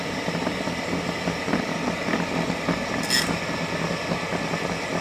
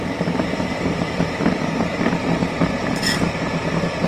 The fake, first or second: second